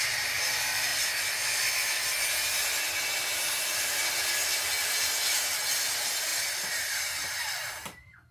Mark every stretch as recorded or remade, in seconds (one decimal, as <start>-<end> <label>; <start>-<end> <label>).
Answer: 0.0-6.3 recorded; 6.3-7.7 remade; 7.7-8.3 recorded